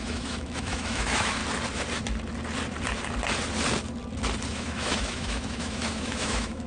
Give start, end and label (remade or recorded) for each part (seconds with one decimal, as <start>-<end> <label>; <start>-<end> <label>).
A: 0.0-1.4 remade; 1.4-4.5 recorded; 4.5-6.7 remade